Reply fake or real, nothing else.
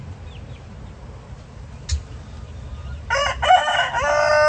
real